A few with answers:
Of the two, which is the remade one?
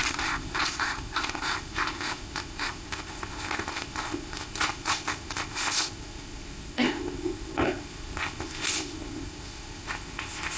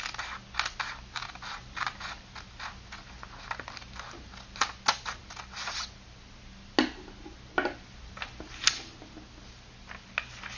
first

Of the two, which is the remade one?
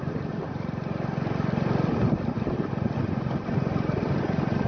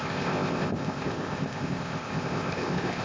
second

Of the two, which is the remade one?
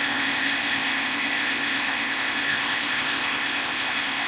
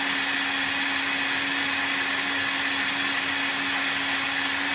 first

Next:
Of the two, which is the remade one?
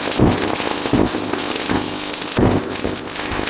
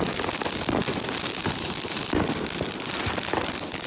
first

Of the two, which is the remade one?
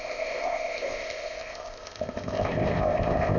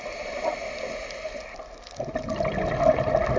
first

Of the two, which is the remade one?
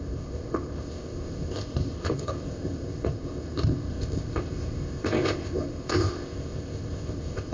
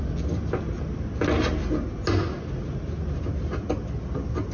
first